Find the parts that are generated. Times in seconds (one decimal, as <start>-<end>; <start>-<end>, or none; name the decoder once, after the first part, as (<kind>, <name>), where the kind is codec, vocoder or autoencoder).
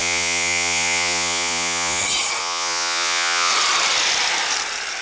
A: 0.0-2.0 (vocoder, Vocos); 2.4-3.5